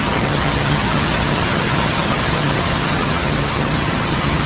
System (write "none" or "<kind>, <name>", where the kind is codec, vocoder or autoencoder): vocoder, HiFi-GAN